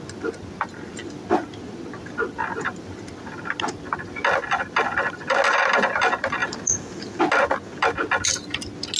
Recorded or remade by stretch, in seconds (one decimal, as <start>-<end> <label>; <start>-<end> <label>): 0.0-6.4 recorded; 6.4-7.2 remade; 7.2-9.0 recorded